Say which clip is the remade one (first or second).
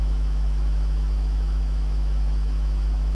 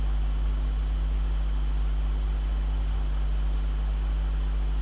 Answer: first